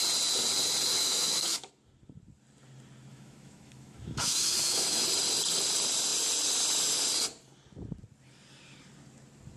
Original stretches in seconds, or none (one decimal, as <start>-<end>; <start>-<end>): 0.0-0.9; 1.7-3.1; 5.0-9.6